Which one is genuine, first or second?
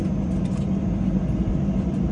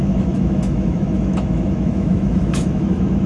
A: first